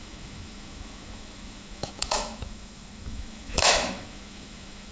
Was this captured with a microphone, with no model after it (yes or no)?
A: no